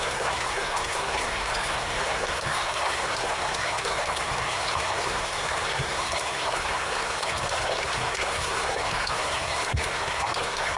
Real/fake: fake